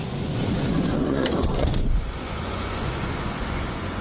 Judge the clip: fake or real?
fake